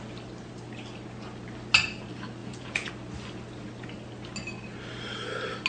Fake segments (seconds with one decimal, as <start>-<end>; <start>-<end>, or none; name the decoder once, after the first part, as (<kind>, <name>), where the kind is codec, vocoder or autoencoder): 2.4-2.9 (vocoder, Vocos)